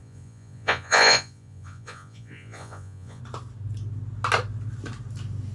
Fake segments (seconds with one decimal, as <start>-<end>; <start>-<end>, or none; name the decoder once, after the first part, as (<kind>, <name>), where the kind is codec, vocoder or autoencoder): 0.0-3.2 (vocoder, Vocos)